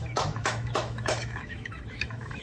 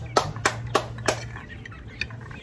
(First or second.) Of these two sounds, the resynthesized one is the first